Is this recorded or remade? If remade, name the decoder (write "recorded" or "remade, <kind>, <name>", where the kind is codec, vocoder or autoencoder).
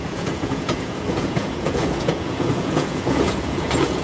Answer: remade, vocoder, Vocos